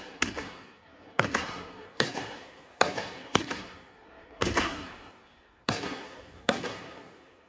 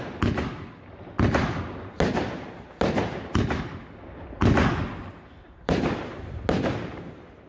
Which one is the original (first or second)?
second